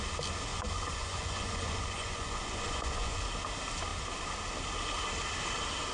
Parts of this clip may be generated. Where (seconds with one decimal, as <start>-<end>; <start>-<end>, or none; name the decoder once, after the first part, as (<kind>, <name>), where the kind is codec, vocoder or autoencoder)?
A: 0.5-3.2 (vocoder, Vocos)